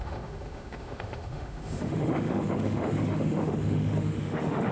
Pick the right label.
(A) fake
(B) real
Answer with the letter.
A